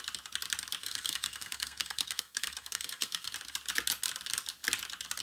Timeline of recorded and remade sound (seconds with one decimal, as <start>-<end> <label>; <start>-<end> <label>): 0.0-0.8 recorded; 0.8-3.3 remade; 3.3-5.2 recorded